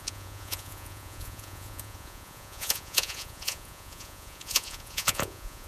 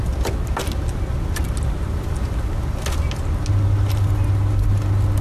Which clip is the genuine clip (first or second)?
second